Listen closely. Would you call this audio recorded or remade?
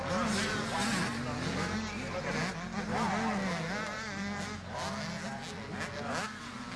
recorded